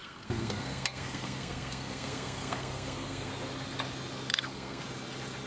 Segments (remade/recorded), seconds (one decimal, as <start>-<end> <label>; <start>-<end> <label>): 0.0-3.3 remade; 3.3-4.3 recorded; 4.3-4.8 remade; 4.8-5.5 recorded